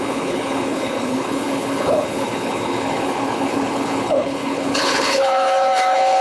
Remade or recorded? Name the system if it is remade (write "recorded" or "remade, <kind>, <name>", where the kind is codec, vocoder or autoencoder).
remade, codec, HILCodec